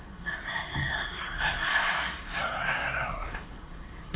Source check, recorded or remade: remade